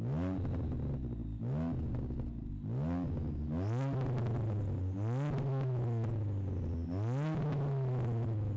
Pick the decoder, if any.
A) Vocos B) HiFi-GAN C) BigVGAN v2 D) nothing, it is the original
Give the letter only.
D